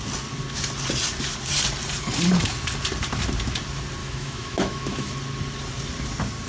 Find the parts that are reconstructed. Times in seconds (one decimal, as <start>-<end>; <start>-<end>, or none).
4.0-5.1